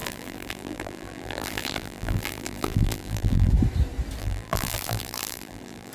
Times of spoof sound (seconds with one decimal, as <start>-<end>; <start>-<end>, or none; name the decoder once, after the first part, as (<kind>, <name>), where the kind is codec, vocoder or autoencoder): 0.0-3.5 (vocoder, BigVGAN v2); 4.2-5.9